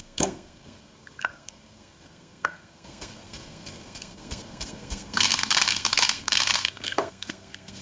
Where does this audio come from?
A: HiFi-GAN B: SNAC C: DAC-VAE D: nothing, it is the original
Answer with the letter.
B